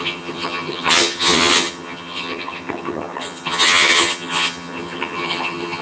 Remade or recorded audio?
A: remade